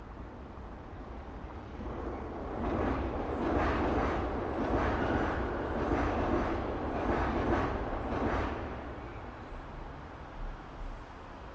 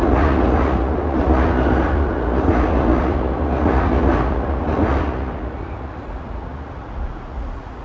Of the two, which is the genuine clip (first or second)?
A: first